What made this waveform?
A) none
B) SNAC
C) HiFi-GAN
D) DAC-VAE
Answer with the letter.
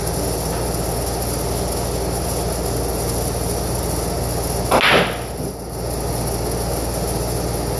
A